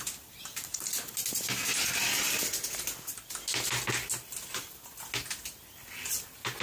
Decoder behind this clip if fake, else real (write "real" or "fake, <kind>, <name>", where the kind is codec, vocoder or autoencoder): real